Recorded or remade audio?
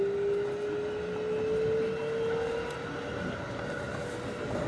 recorded